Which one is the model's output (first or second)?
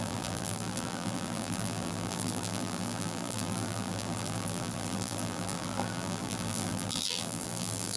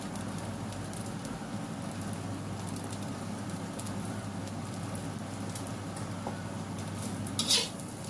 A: first